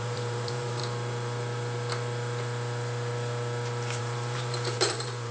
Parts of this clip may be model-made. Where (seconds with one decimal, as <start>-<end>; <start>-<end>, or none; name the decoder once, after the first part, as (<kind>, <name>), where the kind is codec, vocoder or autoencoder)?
0.0-0.8 (vocoder, BigVGAN v2); 4.0-5.3